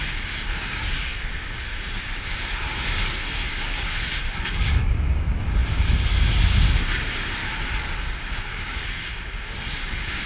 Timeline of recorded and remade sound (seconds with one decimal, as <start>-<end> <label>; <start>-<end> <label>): 0.0-7.4 remade; 7.4-8.0 recorded; 8.0-10.3 remade